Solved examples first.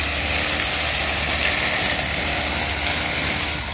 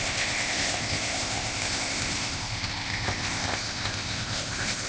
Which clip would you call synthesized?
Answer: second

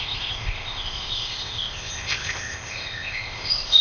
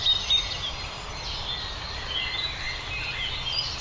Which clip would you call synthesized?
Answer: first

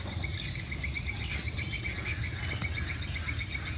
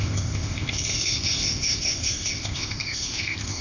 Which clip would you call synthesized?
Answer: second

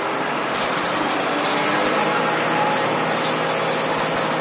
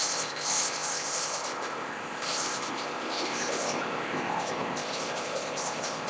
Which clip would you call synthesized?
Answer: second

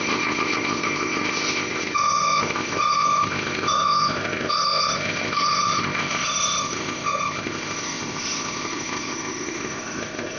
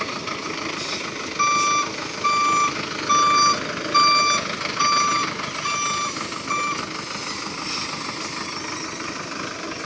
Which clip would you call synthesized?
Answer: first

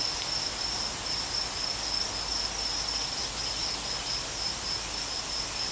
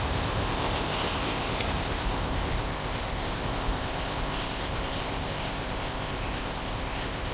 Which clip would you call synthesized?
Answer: second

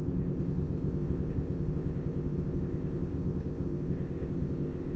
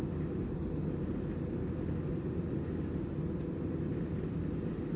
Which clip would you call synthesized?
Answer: first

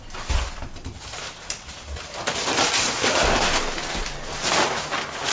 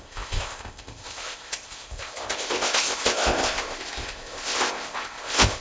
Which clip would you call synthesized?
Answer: second